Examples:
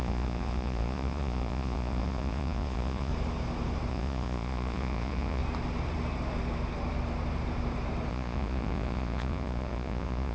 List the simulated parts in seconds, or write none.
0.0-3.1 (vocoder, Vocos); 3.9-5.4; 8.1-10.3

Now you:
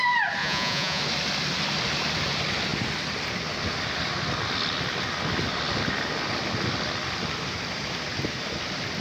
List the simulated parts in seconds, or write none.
0.4-1.0 (vocoder, Vocos)

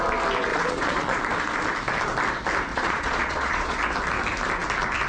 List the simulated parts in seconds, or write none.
0.5-1.2 (vocoder, Vocos); 2.7-3.8

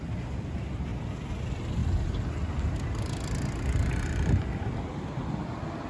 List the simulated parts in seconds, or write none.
none

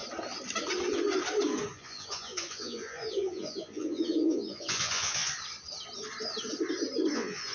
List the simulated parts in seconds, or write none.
1.7-5.3 (vocoder, Vocos); 7.1-7.5